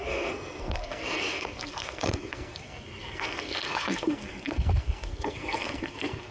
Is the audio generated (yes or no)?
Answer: yes